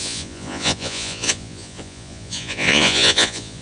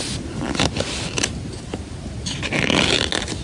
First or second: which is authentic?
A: second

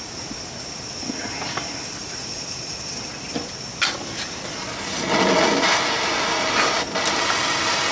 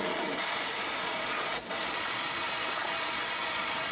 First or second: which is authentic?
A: first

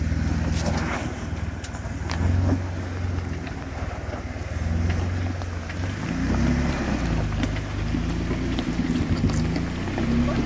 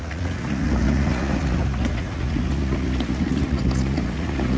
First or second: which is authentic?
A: first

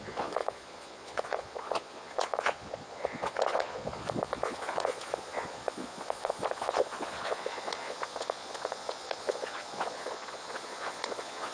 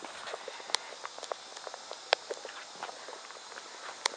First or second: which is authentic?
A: second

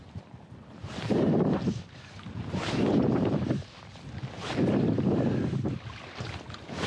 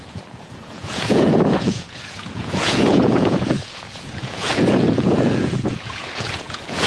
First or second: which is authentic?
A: first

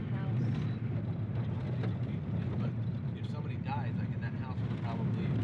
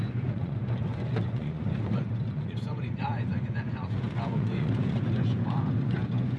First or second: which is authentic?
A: first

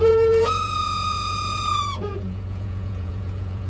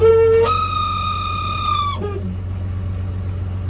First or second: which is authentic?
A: second